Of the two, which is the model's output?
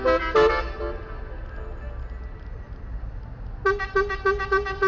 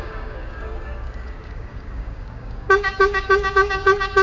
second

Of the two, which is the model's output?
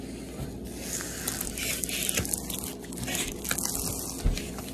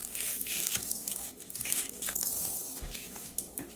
second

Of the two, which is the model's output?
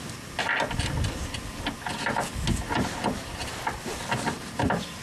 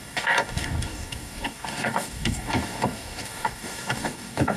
second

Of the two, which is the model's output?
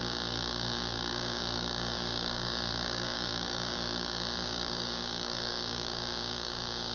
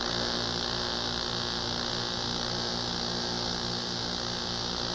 first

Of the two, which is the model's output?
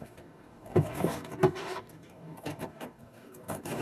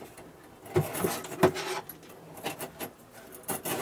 first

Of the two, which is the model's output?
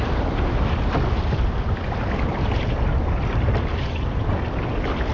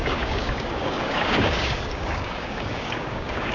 second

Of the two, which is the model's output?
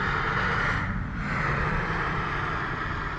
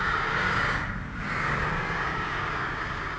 second